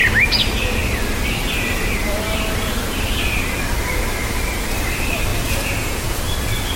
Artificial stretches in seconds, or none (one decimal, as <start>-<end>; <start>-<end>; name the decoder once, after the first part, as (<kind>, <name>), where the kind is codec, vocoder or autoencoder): 5.3-6.2 (vocoder, Vocos)